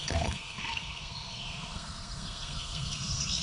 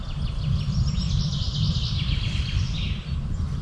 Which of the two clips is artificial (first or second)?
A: first